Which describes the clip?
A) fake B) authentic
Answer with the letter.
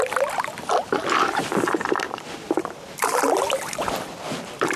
A